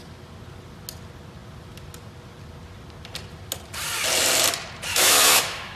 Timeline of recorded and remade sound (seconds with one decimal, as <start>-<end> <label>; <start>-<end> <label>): 0.0-4.9 recorded; 4.9-5.8 remade